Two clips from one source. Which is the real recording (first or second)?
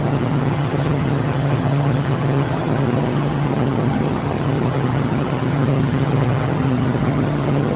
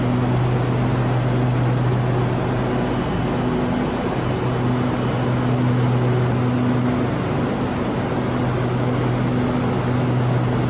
second